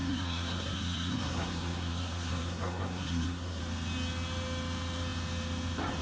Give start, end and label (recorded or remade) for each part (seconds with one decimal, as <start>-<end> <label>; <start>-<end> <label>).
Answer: 0.0-3.6 remade; 3.6-6.0 recorded